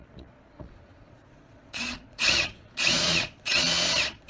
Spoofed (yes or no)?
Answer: yes